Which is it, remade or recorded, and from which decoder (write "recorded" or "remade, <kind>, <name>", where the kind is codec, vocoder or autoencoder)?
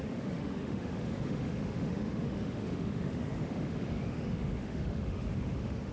remade, autoencoder, DAC-VAE